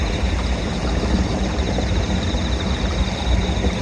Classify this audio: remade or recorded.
recorded